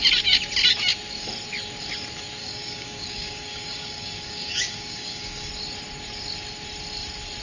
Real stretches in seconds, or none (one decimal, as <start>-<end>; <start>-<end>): 0.0-2.4; 5.5-7.4

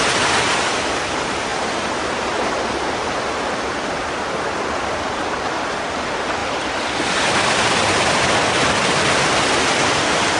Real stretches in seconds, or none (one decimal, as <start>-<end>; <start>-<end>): 0.0-6.4; 9.1-10.4

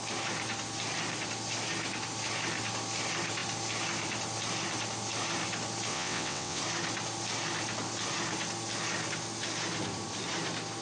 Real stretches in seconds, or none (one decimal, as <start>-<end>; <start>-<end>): 0.0-5.9; 6.6-10.8

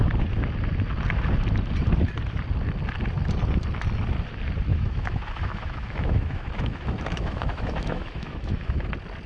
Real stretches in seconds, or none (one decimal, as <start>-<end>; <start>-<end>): 0.0-4.7; 8.9-9.3

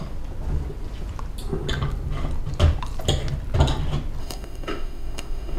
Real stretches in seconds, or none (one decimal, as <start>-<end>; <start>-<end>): 0.0-4.2

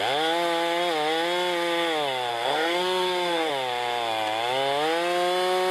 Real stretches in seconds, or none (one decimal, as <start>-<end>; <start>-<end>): 0.0-2.3; 3.5-5.7

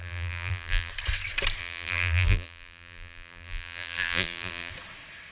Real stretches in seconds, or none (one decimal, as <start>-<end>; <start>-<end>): 0.9-1.6; 4.7-5.3

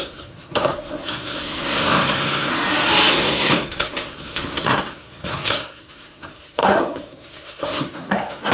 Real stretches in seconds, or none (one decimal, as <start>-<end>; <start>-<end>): 2.5-3.1